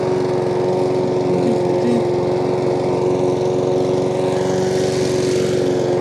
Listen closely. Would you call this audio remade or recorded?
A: recorded